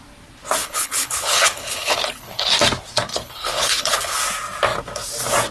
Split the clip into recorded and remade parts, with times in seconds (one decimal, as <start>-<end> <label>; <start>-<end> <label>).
0.0-0.6 recorded; 0.6-2.5 remade; 2.5-3.1 recorded; 3.1-4.2 remade; 4.2-5.5 recorded